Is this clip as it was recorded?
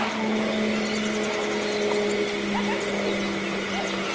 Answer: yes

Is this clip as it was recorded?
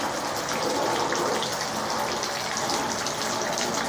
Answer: yes